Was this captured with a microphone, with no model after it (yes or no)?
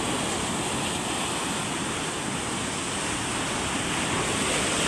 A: yes